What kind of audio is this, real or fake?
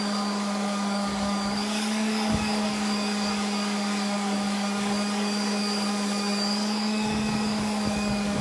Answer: fake